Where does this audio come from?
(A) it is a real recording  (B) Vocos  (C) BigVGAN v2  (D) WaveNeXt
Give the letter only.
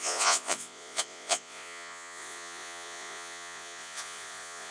B